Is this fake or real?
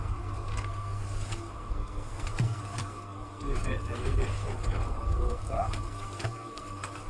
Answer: fake